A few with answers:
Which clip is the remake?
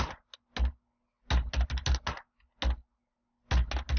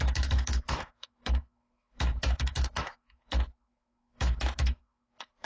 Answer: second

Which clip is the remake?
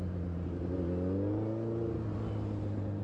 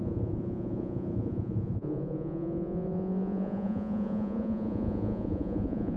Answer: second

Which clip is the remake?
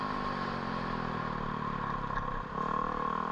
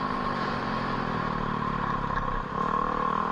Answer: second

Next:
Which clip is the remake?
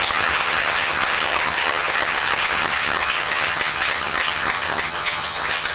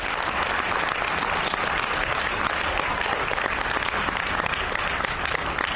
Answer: first